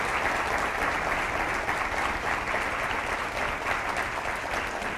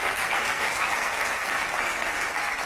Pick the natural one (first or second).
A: first